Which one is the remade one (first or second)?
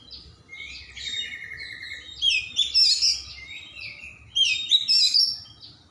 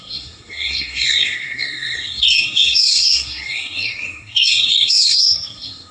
second